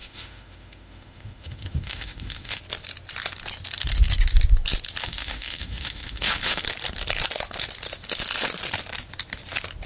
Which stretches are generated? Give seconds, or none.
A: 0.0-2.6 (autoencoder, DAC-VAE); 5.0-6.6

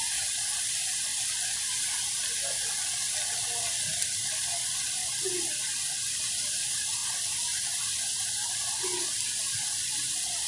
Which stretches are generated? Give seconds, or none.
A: 0.0-1.1 (vocoder, BigVGAN v2); 3.4-10.5

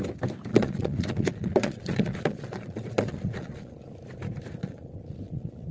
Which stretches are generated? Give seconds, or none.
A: 0.5-3.9 (vocoder, Vocos); 4.6-5.7

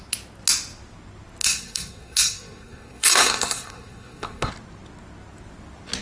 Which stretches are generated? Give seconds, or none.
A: 1.4-4.5 (codec, SNAC)

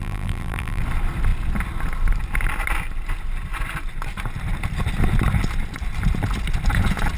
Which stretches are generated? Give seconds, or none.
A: 0.0-0.8 (vocoder, BigVGAN v2)